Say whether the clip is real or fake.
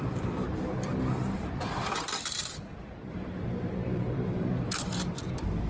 fake